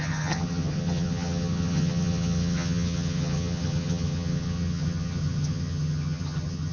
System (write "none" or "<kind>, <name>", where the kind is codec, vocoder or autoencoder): vocoder, HiFi-GAN